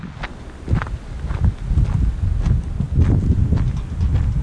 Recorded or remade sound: recorded